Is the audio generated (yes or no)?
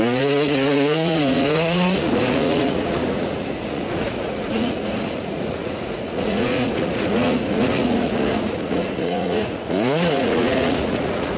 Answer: yes